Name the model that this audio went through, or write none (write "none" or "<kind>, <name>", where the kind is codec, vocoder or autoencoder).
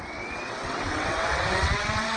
vocoder, WaveNeXt